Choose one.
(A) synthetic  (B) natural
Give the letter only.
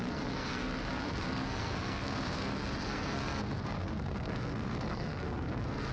A